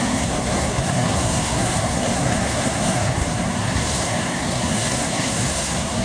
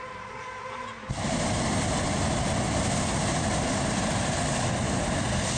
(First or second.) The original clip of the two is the second